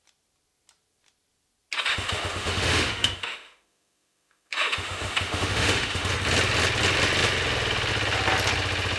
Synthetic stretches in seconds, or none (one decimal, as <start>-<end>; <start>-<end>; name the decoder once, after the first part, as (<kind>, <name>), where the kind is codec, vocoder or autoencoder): 1.9-6.1 (autoencoder, DAC-VAE)